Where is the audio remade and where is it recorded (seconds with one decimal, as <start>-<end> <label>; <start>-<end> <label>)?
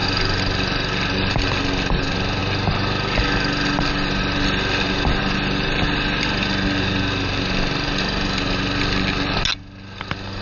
0.0-10.4 recorded